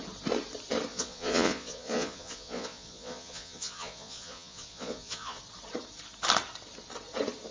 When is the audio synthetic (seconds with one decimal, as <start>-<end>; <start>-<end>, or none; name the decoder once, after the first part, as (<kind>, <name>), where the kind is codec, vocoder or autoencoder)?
0.9-5.4 (vocoder, Vocos)